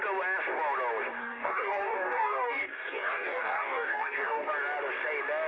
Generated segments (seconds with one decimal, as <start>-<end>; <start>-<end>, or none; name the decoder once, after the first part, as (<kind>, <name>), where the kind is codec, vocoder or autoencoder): 1.2-4.5 (codec, DAC)